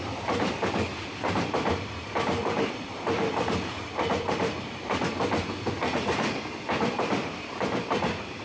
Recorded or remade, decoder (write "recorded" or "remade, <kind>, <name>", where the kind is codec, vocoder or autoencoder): remade, vocoder, BigVGAN v2